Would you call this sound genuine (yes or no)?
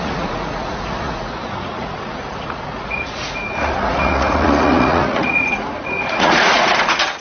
no